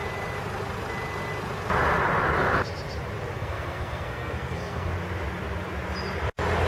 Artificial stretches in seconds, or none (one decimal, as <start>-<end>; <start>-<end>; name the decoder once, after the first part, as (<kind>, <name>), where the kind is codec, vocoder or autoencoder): 3.3-4.9 (codec, SNAC)